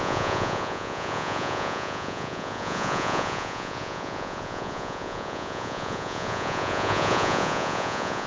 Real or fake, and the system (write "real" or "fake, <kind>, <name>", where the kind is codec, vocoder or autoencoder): fake, vocoder, Vocos